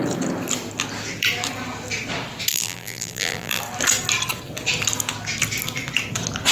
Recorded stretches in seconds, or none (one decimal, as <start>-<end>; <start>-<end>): 0.0-2.5; 3.6-6.5